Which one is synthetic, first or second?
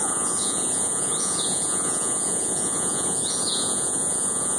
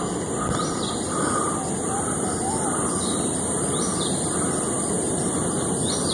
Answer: first